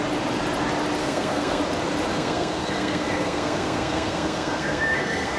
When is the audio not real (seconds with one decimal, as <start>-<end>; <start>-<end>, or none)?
1.0-1.6; 2.1-5.4